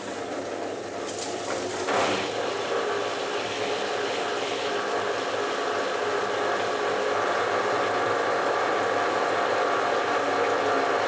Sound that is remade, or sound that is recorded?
recorded